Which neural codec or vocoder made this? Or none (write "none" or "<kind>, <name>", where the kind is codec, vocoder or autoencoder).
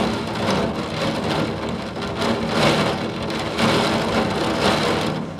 none